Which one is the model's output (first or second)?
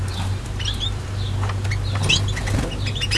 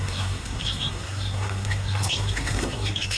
second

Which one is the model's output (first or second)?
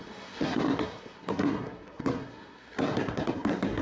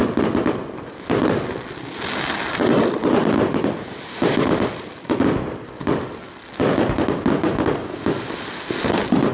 first